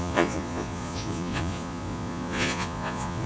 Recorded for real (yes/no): no